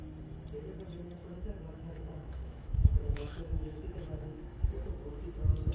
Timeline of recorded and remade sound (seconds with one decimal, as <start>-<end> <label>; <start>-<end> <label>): 0.0-1.2 recorded; 1.2-4.4 remade; 4.4-5.7 recorded